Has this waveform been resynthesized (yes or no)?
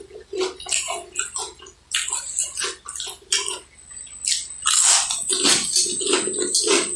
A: no